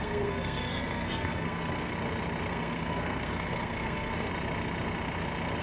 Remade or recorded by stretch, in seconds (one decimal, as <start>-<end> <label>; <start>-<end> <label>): 0.0-1.9 remade; 1.9-2.5 recorded; 2.5-4.3 remade; 4.3-5.6 recorded